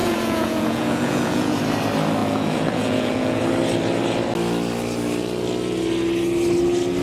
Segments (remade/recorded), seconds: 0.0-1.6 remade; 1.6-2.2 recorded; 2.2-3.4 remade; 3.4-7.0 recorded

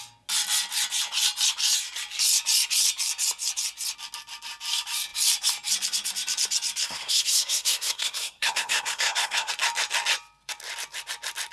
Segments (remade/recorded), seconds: 0.0-6.8 recorded; 6.8-9.5 remade; 9.5-11.5 recorded

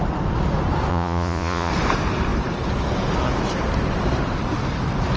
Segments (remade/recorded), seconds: 0.0-0.9 recorded; 0.9-1.7 remade; 1.7-5.2 recorded

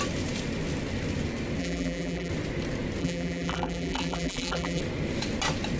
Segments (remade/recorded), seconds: 0.0-1.6 recorded; 1.6-2.3 remade; 2.3-3.0 recorded; 3.0-4.8 remade; 4.8-5.8 recorded

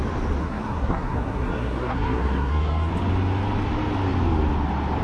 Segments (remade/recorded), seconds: 0.0-0.4 recorded; 0.4-2.9 remade; 2.9-5.0 recorded

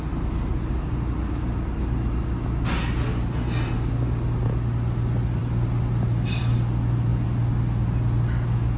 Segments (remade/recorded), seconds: 0.0-8.8 recorded

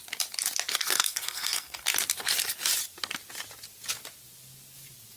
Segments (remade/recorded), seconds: 0.0-0.7 recorded; 0.7-1.8 remade; 1.8-5.2 recorded

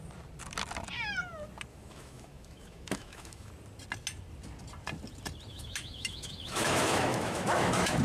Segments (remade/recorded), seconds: 0.0-1.7 recorded; 1.7-3.5 remade; 3.5-5.5 recorded; 5.5-8.0 remade